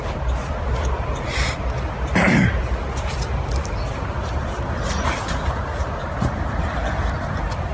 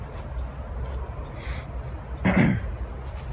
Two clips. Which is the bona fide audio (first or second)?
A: second